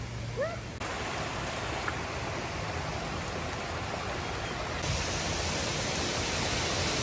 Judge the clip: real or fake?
real